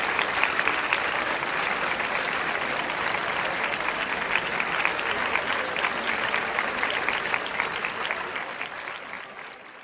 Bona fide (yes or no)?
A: yes